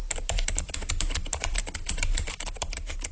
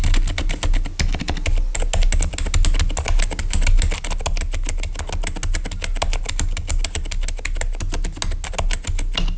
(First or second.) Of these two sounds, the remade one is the first